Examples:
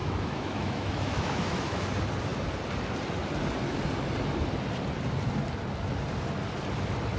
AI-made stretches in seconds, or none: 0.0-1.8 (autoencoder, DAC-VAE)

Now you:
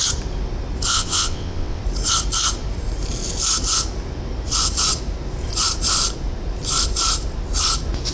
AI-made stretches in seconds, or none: 0.9-1.8 (vocoder, WaveNeXt)

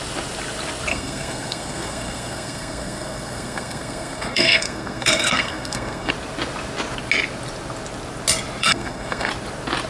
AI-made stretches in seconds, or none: 0.9-6.1 (codec, SNAC); 8.6-9.3